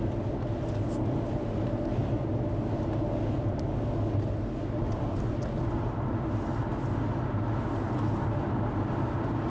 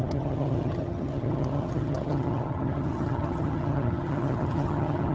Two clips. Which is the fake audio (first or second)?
second